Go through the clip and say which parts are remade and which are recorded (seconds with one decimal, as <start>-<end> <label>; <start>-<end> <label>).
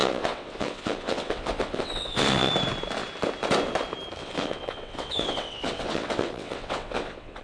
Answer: 0.0-2.5 remade; 2.5-4.2 recorded; 4.2-7.4 remade